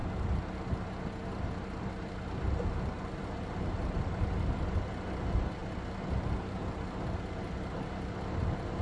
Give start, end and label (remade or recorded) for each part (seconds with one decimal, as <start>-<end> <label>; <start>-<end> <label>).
0.0-8.8 recorded